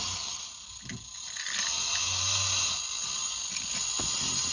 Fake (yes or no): no